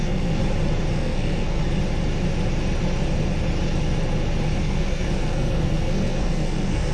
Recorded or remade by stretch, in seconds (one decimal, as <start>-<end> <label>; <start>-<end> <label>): 0.0-0.4 remade; 0.4-0.9 recorded; 0.9-1.6 remade; 1.6-4.6 recorded; 4.6-6.9 remade